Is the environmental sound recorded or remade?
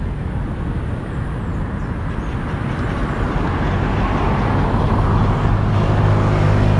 recorded